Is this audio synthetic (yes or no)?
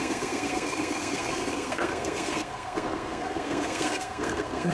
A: yes